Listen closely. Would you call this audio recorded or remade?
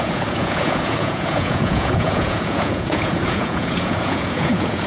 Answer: remade